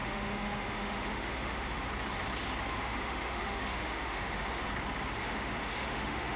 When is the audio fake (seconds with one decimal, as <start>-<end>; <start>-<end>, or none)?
0.0-1.9; 2.7-4.7; 5.2-6.4